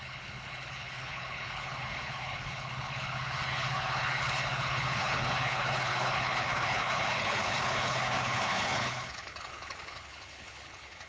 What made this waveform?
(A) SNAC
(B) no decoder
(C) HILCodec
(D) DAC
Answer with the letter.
C